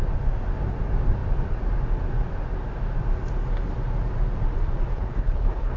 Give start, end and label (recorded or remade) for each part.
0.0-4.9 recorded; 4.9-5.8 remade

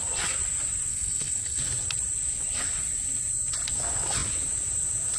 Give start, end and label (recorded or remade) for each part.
0.0-0.9 recorded; 0.9-1.6 remade; 1.6-5.2 recorded

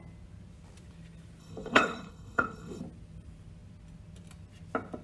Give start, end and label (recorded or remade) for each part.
0.0-1.4 recorded; 1.4-2.8 remade; 2.8-5.0 recorded

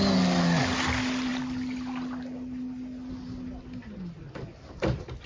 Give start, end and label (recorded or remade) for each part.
0.0-5.3 recorded

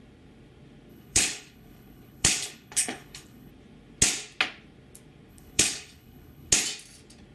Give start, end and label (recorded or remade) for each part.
0.0-0.9 recorded; 0.9-3.5 remade; 3.5-5.3 recorded; 5.3-6.5 remade; 6.5-7.3 recorded

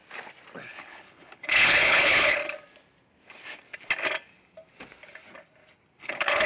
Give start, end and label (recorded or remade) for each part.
0.0-0.6 recorded; 0.6-2.4 remade; 2.4-6.0 recorded; 6.0-6.5 remade